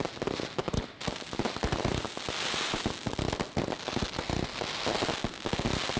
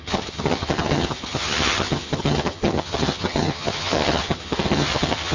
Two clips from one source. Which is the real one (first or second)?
first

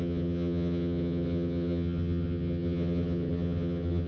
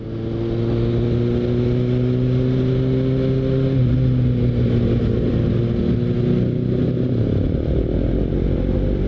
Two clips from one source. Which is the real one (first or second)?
second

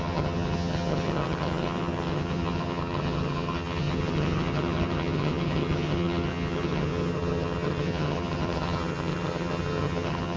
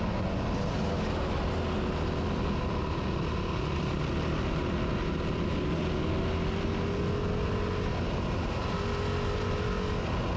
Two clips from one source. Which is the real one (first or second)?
second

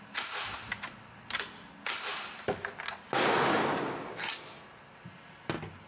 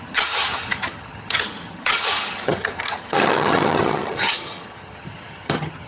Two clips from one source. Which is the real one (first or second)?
first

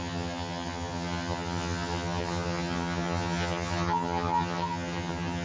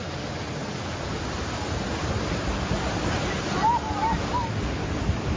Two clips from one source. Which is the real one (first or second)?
second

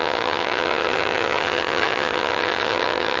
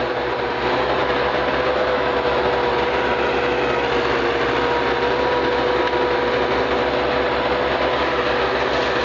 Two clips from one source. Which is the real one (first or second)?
second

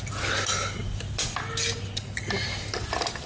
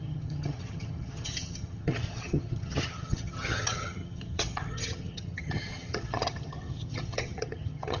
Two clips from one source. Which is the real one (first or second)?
first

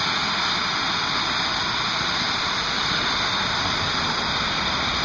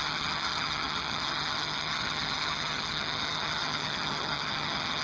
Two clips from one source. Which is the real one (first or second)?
first